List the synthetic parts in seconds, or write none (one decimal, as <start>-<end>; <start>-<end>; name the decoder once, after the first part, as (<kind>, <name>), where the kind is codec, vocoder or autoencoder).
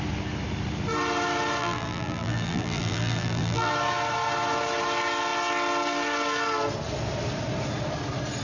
1.6-3.7 (vocoder, BigVGAN v2)